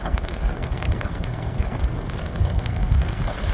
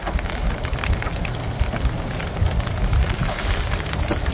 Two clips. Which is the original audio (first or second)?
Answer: second